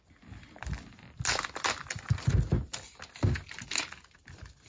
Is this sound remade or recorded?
recorded